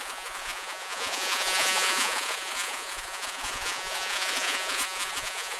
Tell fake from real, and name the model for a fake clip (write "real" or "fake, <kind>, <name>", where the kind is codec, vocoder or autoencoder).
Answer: fake, vocoder, Vocos